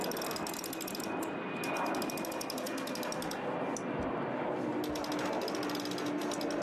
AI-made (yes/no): no